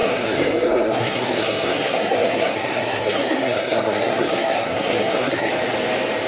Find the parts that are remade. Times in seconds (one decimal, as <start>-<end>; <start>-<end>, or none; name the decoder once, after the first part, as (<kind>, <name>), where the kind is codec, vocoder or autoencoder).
0.0-5.5 (codec, SNAC)